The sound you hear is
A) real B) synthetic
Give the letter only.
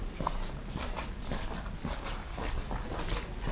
A